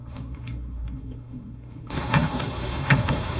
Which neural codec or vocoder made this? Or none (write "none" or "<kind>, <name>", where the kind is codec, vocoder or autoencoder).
codec, SNAC